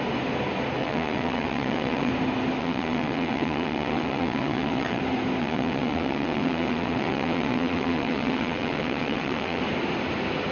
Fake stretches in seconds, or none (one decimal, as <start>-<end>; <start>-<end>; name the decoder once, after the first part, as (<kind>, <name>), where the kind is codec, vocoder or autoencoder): 0.8-2.1 (vocoder, WaveNeXt); 2.6-5.0; 5.4-9.6